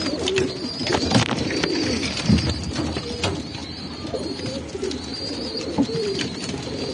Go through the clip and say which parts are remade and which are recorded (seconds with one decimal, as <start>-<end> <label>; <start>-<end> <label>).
0.0-0.9 recorded; 0.9-2.3 remade; 2.3-3.6 recorded; 3.6-4.4 remade; 4.4-5.1 recorded; 5.1-5.7 remade; 5.7-6.9 recorded